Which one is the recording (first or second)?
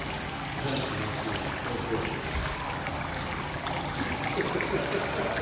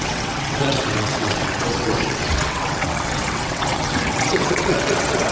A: first